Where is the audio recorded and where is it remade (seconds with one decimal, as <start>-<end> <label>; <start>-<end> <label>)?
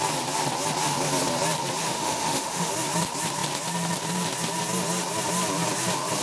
0.0-1.8 recorded; 1.8-2.7 remade; 2.7-6.2 recorded